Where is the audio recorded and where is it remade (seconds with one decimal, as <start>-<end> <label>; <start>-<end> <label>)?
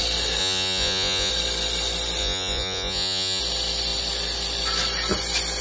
0.0-0.4 recorded; 0.4-1.3 remade; 1.3-2.2 recorded; 2.2-3.4 remade; 3.4-5.6 recorded